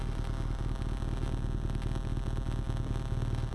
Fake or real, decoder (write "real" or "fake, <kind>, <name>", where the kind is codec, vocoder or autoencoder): real